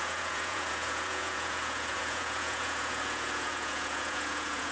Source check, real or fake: fake